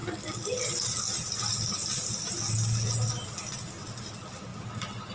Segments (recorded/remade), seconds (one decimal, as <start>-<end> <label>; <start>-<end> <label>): 0.0-5.1 recorded